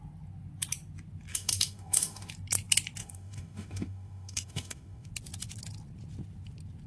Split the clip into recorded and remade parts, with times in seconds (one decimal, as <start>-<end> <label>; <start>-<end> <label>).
0.0-1.3 recorded; 1.3-2.3 remade; 2.3-3.0 recorded; 3.0-5.1 remade; 5.1-6.9 recorded